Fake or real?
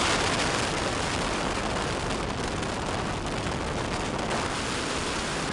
real